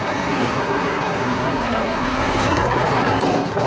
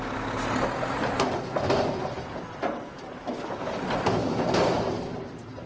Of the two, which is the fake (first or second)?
first